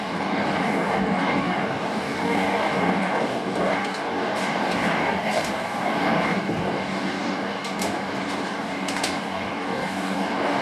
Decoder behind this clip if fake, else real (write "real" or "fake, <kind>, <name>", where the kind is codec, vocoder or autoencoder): fake, codec, DAC